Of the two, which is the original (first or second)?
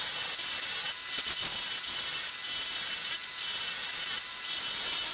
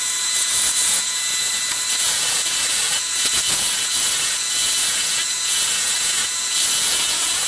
first